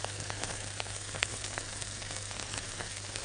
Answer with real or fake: fake